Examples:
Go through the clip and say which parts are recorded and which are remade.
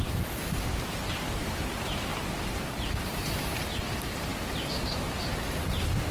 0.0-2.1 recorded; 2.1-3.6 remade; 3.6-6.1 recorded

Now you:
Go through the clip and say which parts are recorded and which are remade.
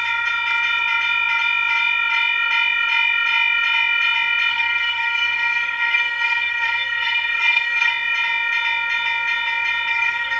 0.0-4.5 recorded; 4.5-7.9 remade; 7.9-9.9 recorded; 9.9-10.4 remade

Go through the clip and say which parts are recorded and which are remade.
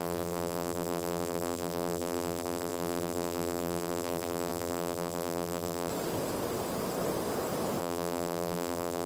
0.0-5.9 remade; 5.9-7.8 recorded; 7.8-9.1 remade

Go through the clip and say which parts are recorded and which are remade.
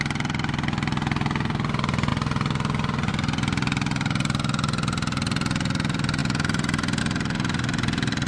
0.0-6.2 recorded; 6.2-7.0 remade; 7.0-8.3 recorded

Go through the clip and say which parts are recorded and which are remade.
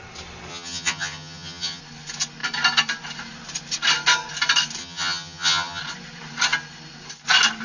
0.0-0.5 recorded; 0.5-1.8 remade; 1.8-4.8 recorded; 4.8-5.8 remade; 5.8-7.6 recorded